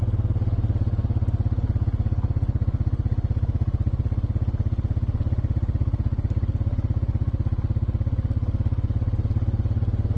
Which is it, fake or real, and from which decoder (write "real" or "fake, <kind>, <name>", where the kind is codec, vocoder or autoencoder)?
real